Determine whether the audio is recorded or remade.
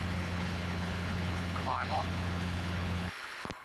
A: remade